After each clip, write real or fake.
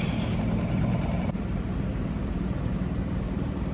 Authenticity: fake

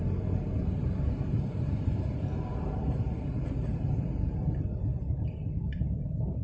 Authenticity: fake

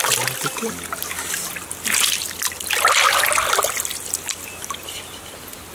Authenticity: real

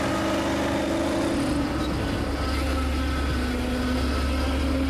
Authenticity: real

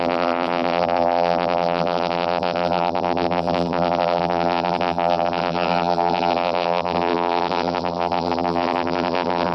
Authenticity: fake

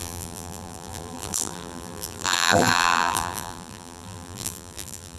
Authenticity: fake